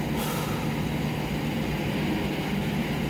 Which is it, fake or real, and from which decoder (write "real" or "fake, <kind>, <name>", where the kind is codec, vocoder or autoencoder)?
real